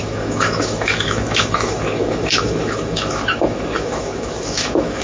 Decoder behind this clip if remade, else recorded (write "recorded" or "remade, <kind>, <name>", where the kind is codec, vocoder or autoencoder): remade, autoencoder, DAC-VAE